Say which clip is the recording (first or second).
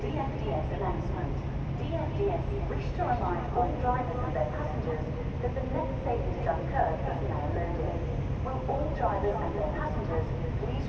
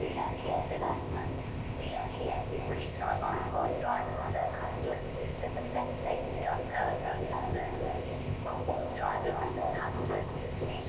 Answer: first